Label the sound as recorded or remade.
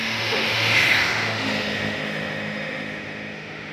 remade